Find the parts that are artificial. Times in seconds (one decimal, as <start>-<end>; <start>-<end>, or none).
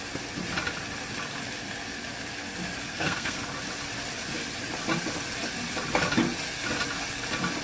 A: 2.9-3.4